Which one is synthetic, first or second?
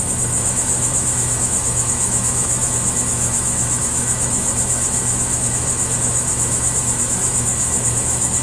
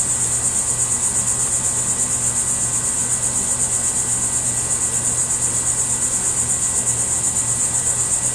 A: first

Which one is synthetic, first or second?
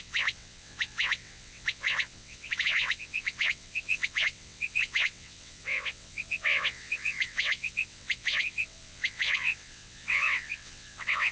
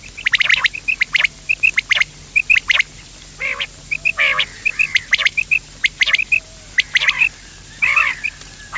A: first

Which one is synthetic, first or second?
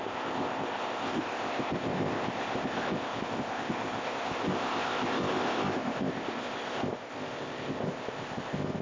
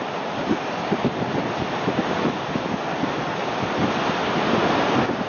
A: first